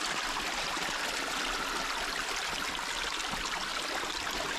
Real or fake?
real